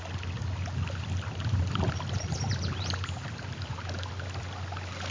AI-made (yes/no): no